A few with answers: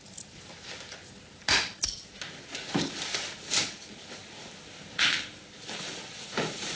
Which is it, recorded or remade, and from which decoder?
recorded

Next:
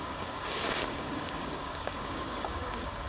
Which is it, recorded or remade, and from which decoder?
remade, codec, DAC